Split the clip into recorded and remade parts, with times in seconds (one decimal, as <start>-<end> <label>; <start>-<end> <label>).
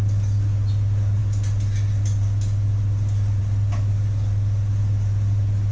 0.0-5.7 recorded